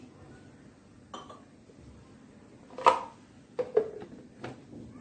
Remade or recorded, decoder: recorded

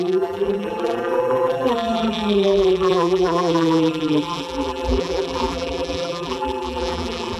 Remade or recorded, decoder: remade, vocoder, BigVGAN v2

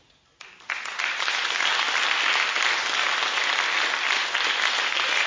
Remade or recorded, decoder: recorded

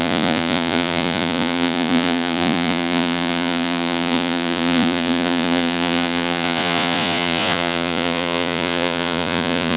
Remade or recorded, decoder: remade, vocoder, Vocos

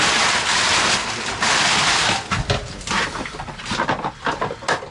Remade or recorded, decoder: recorded